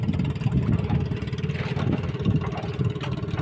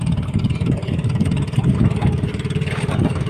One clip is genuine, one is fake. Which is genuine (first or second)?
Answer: first